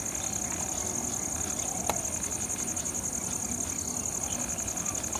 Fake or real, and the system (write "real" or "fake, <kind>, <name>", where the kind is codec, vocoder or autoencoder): real